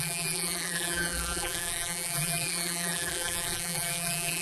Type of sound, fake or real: fake